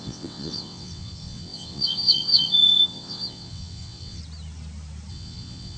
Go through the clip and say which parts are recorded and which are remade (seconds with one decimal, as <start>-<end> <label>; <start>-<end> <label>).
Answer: 0.0-4.2 remade; 4.2-5.1 recorded; 5.1-5.8 remade

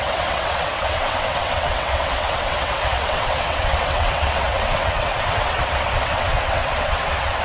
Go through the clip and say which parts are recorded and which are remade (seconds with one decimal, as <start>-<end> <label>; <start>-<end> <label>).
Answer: 0.0-7.4 remade